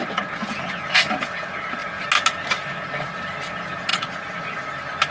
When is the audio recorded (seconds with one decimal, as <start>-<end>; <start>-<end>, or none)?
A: 0.0-3.9; 4.6-5.1